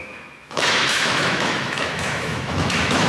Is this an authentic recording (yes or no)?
no